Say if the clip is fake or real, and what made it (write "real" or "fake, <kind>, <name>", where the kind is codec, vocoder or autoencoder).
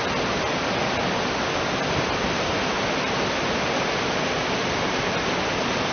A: real